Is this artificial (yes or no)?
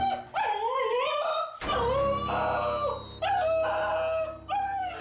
no